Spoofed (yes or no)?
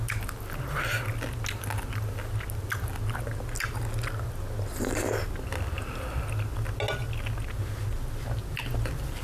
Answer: no